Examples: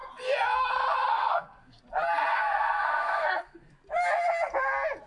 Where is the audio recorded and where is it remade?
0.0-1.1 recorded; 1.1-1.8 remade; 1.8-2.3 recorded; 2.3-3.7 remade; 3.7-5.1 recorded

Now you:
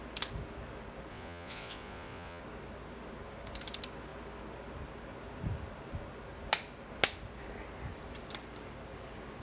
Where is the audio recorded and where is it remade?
0.0-1.1 recorded; 1.1-2.4 remade; 2.4-9.4 recorded